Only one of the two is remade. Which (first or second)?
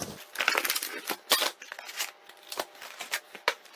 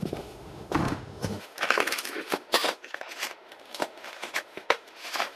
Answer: second